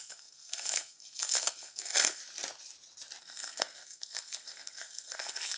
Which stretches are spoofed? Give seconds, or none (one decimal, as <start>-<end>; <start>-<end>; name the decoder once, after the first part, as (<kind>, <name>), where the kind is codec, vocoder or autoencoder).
0.0-2.2 (codec, SNAC); 3.2-5.6